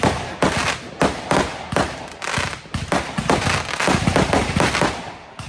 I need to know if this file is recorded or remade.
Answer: remade